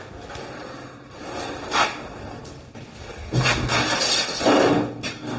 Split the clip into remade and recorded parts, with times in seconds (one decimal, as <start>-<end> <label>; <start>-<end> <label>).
0.0-5.4 recorded